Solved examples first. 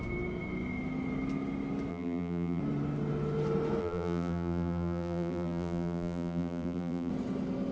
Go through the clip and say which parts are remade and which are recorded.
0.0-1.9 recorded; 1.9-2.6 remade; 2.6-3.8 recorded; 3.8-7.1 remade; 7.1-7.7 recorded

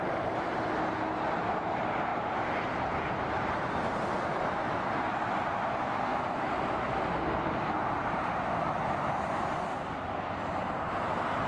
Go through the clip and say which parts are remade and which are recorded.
0.0-2.1 recorded; 2.1-3.1 remade; 3.1-6.1 recorded; 6.1-8.7 remade; 8.7-11.5 recorded

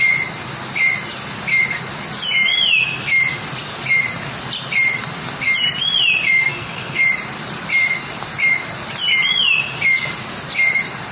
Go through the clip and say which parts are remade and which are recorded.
0.0-6.4 recorded; 6.4-7.0 remade; 7.0-11.1 recorded

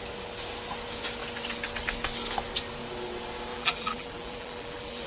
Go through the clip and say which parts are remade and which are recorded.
0.0-3.5 recorded; 3.5-5.1 remade

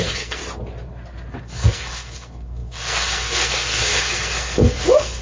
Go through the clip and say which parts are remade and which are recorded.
0.0-0.4 remade; 0.4-1.4 recorded; 1.4-5.2 remade

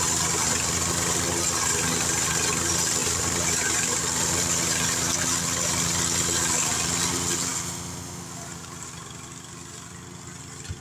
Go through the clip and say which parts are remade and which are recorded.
0.0-3.0 recorded; 3.0-4.0 remade; 4.0-10.8 recorded